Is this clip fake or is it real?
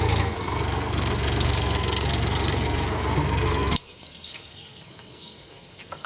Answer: fake